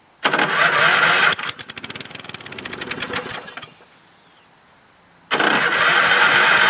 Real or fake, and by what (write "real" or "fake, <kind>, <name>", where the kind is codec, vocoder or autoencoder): real